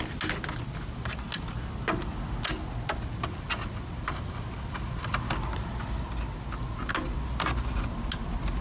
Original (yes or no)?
yes